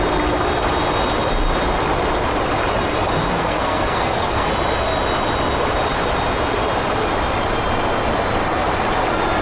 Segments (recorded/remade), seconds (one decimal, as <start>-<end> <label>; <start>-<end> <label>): 0.0-3.4 recorded; 3.4-4.5 remade; 4.5-9.4 recorded